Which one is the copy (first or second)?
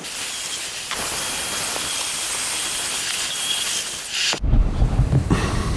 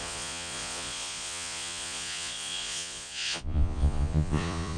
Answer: second